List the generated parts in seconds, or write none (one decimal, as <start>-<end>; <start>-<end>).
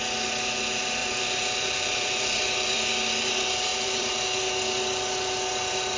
1.0-2.9; 3.7-4.4